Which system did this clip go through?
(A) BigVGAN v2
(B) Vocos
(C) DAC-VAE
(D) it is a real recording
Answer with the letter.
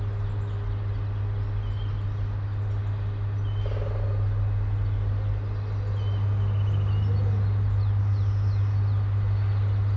D